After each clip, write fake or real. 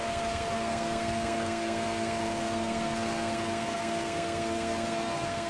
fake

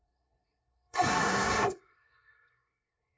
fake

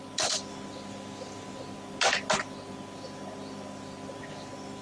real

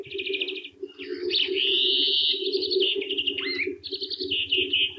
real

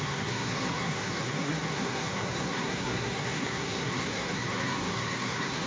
fake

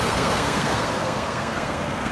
fake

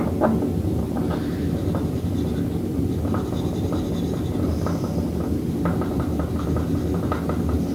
real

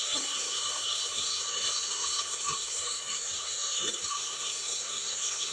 fake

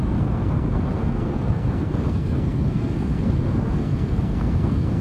fake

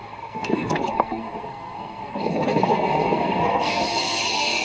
fake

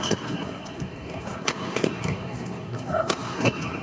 fake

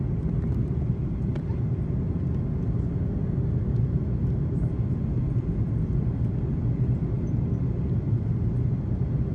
real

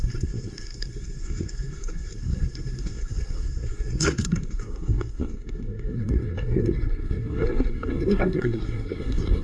fake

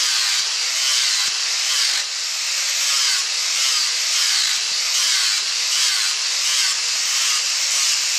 real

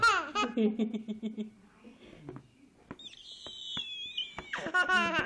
real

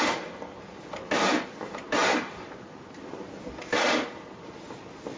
real